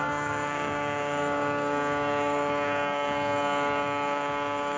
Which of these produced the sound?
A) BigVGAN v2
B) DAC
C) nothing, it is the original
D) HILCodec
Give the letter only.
B